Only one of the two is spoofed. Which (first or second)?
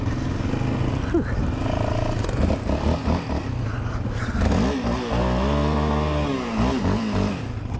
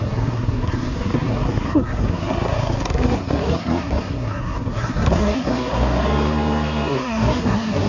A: second